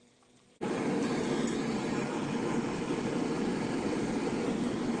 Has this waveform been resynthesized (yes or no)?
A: yes